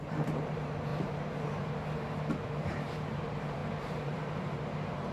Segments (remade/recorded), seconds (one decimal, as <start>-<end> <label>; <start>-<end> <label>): 0.0-5.1 remade